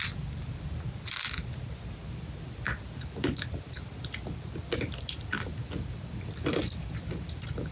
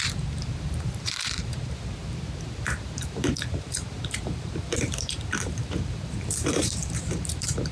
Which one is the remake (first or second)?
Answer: second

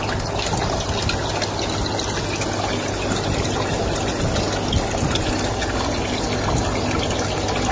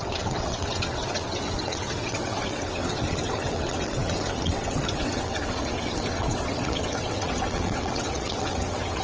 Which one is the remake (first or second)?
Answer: second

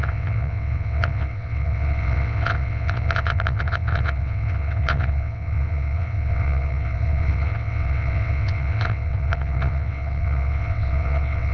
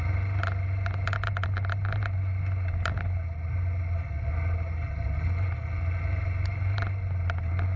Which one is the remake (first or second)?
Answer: first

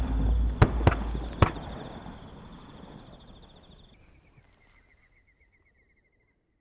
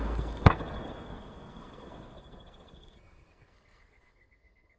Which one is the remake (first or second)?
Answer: second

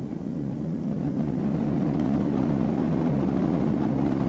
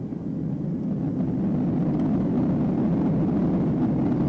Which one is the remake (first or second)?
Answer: first